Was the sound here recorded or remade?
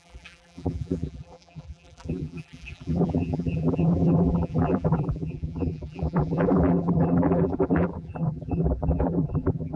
remade